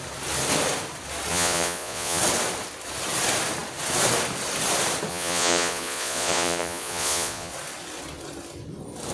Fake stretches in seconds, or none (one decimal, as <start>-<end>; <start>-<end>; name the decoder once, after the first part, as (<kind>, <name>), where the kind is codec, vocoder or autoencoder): 1.3-2.2 (vocoder, Vocos); 5.1-7.5